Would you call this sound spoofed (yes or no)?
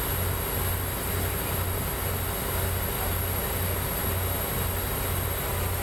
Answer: no